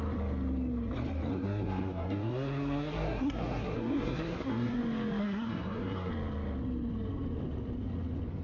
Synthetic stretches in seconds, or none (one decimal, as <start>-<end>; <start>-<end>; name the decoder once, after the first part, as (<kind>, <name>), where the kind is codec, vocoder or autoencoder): 1.3-4.8 (codec, SNAC); 5.2-6.1